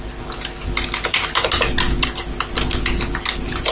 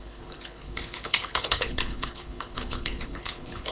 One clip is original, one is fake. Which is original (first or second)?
first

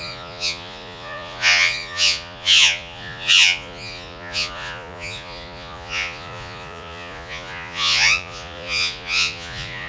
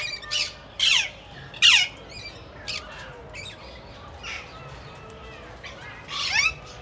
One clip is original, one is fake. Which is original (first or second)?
second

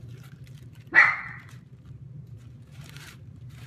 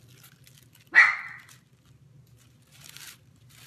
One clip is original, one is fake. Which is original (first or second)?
second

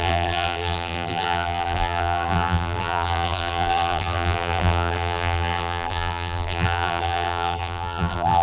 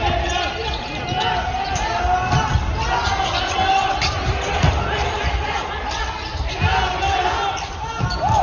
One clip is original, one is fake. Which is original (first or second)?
second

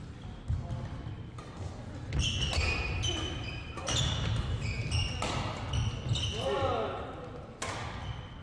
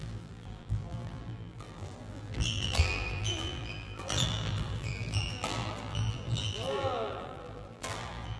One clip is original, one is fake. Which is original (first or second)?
first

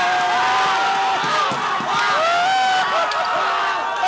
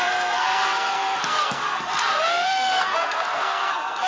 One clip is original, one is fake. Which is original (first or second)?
first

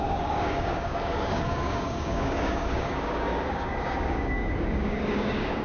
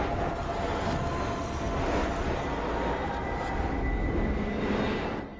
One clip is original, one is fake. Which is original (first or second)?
second